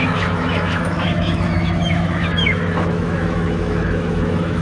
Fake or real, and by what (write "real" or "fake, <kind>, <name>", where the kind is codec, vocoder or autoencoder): fake, autoencoder, DAC-VAE